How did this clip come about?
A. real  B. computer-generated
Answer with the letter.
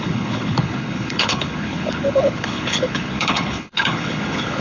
B